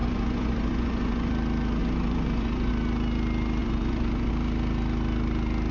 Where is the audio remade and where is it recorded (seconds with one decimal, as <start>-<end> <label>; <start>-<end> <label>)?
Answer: 0.0-1.3 remade; 1.3-1.8 recorded; 1.8-2.7 remade; 2.7-3.6 recorded; 3.6-4.3 remade; 4.3-5.7 recorded